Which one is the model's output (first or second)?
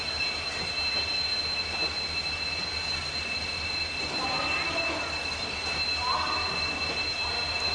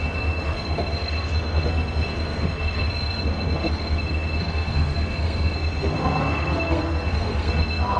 second